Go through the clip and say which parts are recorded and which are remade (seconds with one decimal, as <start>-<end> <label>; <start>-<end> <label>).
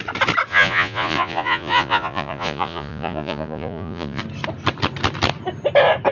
0.0-0.5 recorded; 0.5-4.2 remade; 4.2-6.1 recorded